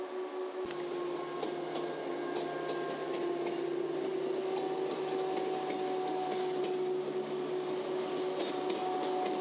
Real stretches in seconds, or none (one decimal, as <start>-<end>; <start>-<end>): 0.0-9.4